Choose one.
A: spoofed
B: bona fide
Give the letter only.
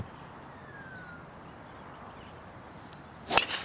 B